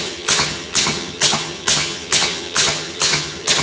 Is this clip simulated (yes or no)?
yes